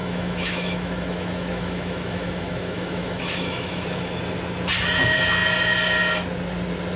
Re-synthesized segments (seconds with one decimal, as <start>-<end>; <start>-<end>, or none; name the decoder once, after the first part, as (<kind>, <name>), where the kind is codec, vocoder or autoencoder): 0.0-4.2 (autoencoder, DAC-VAE)